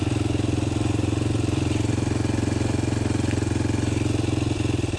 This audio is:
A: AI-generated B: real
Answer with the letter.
B